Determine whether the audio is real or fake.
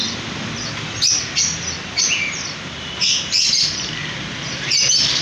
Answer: real